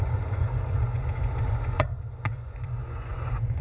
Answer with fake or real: fake